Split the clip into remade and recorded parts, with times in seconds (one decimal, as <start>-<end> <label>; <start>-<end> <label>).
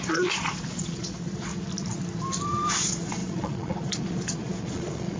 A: 0.0-1.5 remade; 1.5-2.7 recorded; 2.7-5.2 remade